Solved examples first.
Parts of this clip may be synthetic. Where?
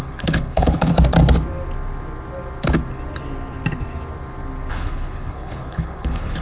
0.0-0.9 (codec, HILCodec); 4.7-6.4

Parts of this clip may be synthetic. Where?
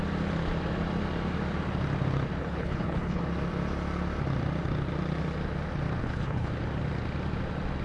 2.4-3.2 (codec, HILCodec); 6.0-6.5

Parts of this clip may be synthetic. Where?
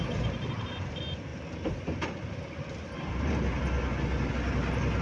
none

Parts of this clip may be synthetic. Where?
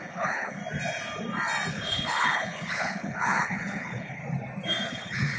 0.0-0.6 (codec, HILCodec); 1.7-4.2; 4.9-5.4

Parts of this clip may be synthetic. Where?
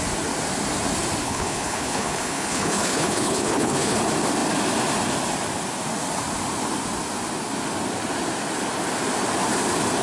1.2-4.0 (codec, HILCodec)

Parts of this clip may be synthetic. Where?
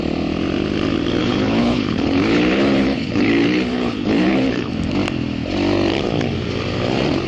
1.2-4.7 (codec, HILCodec)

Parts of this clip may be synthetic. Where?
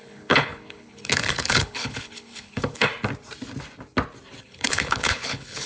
0.0-2.9 (codec, HILCodec); 4.4-5.7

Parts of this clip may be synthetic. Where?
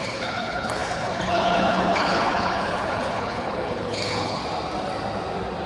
0.0-4.4 (codec, HILCodec)